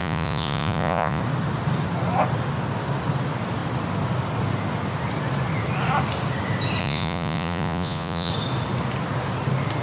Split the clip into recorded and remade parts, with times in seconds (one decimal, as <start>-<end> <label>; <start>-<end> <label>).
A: 0.0-1.2 remade; 1.2-6.8 recorded; 6.8-8.3 remade; 8.3-9.8 recorded